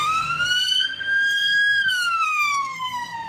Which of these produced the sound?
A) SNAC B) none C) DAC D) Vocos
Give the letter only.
A